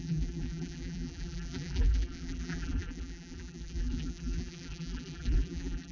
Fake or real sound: fake